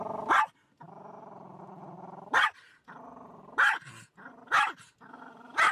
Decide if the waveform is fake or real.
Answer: real